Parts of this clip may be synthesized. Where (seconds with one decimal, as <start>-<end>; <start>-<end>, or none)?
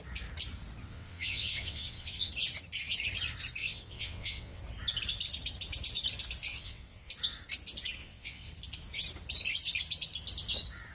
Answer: 0.8-2.3; 3.6-4.6; 6.5-7.1; 8.0-8.5